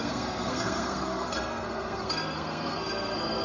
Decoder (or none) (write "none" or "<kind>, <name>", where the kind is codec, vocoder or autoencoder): codec, SNAC